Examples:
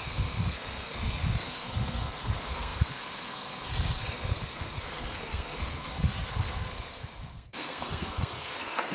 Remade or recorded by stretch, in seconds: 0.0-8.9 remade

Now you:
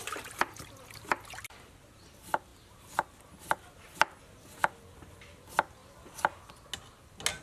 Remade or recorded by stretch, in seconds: 0.0-7.4 recorded